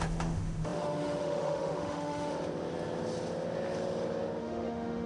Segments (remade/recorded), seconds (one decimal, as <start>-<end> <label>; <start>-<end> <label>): 0.0-2.3 remade; 2.3-4.4 recorded; 4.4-5.1 remade